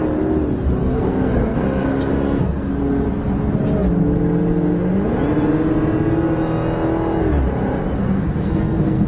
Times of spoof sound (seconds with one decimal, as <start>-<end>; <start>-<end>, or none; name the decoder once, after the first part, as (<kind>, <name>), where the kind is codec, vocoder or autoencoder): 0.8-2.7 (codec, SNAC); 8.0-9.1